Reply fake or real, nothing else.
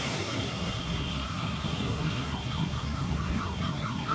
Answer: fake